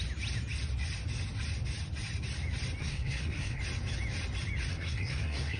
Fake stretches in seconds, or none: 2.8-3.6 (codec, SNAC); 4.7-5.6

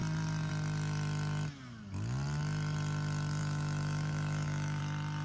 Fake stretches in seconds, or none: 3.4-4.8 (autoencoder, DAC-VAE)

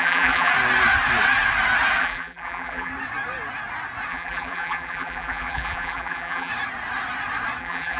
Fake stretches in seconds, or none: 0.0-0.5 (vocoder, BigVGAN v2); 2.0-2.9; 4.1-6.5; 7.6-8.0

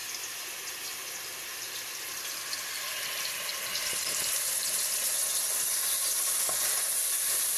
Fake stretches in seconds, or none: 0.0-3.5 (vocoder, BigVGAN v2); 7.0-7.6